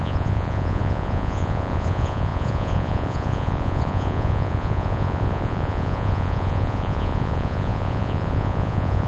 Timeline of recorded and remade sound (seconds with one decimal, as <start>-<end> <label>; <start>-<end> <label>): 0.0-9.1 remade